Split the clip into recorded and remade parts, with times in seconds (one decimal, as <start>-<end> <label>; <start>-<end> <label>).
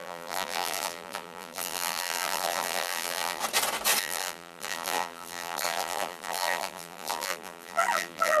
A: 0.0-3.4 remade; 3.4-4.0 recorded; 4.0-8.4 remade